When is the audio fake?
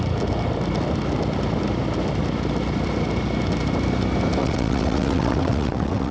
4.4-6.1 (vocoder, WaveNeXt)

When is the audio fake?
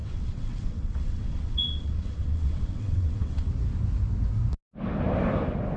0.0-3.5 (vocoder, WaveNeXt)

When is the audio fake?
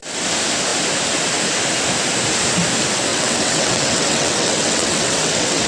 3.1-5.7 (vocoder, WaveNeXt)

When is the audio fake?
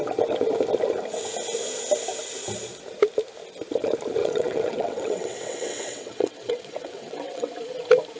4.2-7.5 (vocoder, WaveNeXt)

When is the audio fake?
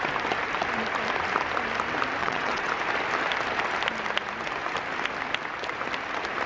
2.2-2.7 (vocoder, WaveNeXt)